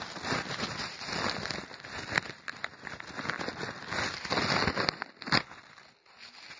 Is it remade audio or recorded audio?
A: recorded